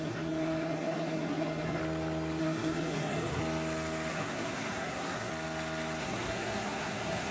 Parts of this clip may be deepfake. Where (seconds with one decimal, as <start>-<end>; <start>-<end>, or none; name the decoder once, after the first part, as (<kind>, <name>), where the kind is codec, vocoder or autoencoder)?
0.0-1.8 (codec, SNAC); 2.4-3.4; 4.1-5.3; 6.0-7.3